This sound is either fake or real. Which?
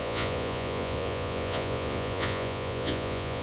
fake